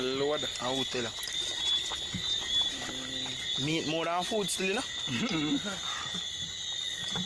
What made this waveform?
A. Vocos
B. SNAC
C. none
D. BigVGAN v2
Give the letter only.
C